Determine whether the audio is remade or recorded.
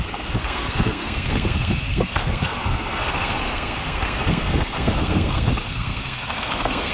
remade